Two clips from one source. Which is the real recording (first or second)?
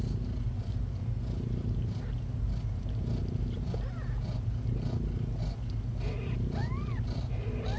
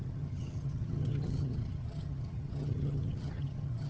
first